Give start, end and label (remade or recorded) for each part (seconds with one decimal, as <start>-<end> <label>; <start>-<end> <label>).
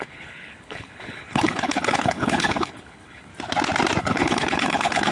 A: 0.0-3.3 remade; 3.3-4.0 recorded; 4.0-5.1 remade